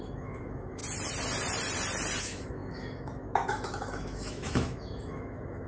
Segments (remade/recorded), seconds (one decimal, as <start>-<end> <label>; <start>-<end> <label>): 0.0-0.8 remade; 0.8-2.2 recorded; 2.2-5.7 remade